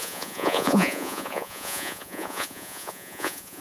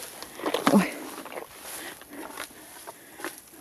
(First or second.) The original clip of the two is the second